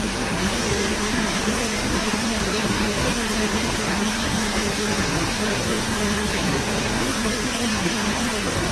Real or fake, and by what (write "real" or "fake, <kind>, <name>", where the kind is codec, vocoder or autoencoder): fake, codec, SNAC